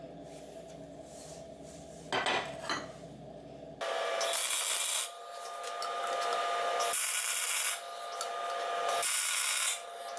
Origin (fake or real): real